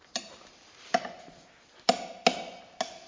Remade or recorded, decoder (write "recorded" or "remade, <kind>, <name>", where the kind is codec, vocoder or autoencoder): recorded